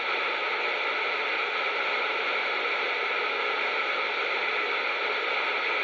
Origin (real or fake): real